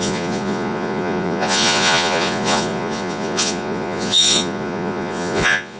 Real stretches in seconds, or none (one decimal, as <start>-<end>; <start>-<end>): none